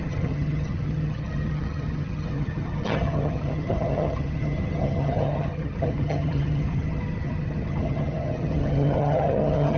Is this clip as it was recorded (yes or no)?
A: no